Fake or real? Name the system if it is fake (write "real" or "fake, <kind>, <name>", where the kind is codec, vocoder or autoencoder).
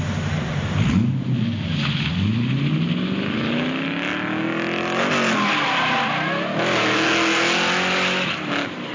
real